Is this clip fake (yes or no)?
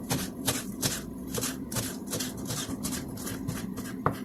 no